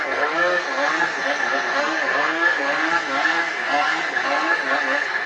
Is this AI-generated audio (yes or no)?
yes